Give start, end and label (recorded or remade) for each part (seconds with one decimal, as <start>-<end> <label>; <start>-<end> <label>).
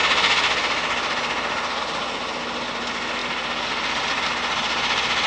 0.0-5.3 recorded